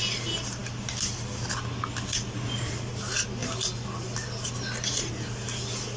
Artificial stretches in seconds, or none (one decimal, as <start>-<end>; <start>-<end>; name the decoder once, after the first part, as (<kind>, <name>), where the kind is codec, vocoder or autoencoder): none